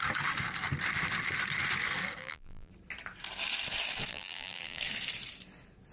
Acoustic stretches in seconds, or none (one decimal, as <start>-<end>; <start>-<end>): 0.0-2.2; 2.7-4.1; 4.8-5.9